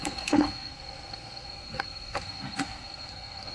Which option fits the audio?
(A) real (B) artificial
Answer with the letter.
B